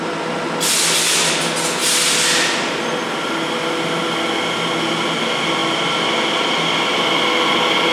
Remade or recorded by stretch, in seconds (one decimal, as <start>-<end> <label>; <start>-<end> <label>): 0.0-7.9 recorded